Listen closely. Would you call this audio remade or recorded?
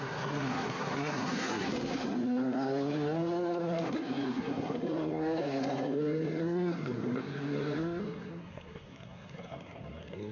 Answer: remade